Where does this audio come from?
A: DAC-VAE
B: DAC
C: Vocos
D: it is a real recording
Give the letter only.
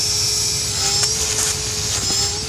D